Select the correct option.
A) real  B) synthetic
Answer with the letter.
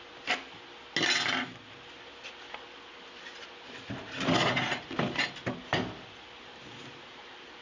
A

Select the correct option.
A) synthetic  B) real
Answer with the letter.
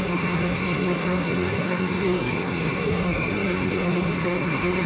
A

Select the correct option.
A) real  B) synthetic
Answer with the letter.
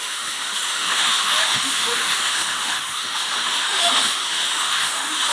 B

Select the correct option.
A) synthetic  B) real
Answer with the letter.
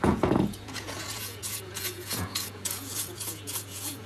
A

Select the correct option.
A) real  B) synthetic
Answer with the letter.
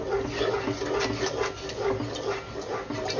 A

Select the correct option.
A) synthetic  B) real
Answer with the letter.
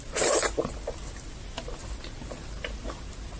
B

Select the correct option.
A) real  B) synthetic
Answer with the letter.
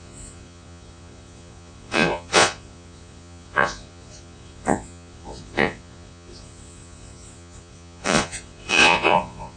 B